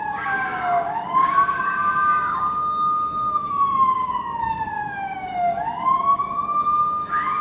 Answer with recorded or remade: remade